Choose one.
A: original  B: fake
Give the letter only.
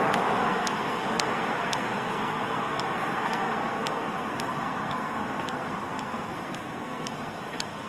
B